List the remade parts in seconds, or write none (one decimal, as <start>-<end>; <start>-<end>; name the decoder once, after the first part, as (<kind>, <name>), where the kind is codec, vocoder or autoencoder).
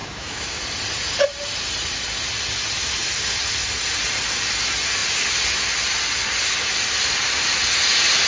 0.0-0.6 (autoencoder, DAC-VAE)